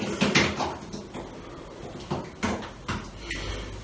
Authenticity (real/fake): real